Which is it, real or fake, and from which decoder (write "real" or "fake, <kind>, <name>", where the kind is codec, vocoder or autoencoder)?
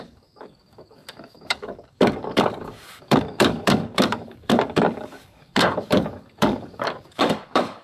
fake, codec, DAC